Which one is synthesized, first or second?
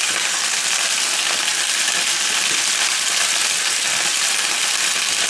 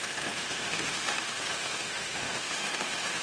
second